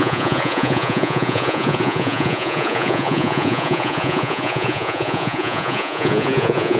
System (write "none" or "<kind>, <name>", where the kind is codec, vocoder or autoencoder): vocoder, Vocos